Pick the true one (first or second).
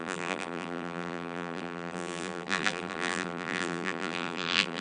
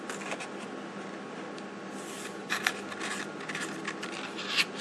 second